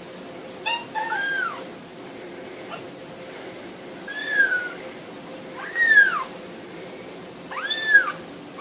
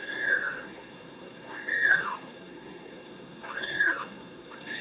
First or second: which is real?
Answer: first